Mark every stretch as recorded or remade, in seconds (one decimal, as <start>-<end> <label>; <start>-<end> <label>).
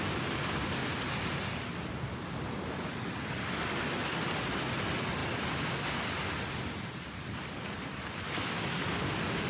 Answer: 0.0-9.5 recorded